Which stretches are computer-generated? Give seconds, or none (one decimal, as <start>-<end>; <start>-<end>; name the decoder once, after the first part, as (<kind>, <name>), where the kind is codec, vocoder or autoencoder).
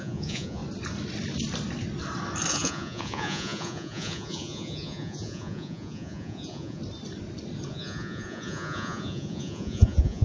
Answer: 0.0-0.6 (vocoder, Vocos); 2.5-6.8; 7.7-10.2